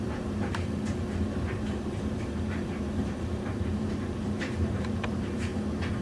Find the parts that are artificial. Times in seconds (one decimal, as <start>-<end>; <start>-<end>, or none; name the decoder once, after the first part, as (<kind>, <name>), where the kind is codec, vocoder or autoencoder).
0.0-5.5 (vocoder, BigVGAN v2)